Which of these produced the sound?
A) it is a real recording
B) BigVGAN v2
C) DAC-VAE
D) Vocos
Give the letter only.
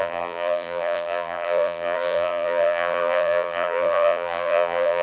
B